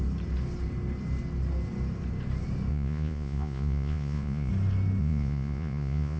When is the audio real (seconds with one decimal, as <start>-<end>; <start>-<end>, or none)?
0.0-2.7; 4.5-5.0